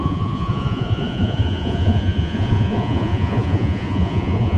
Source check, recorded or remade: remade